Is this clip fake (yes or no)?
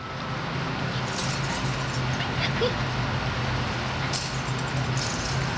no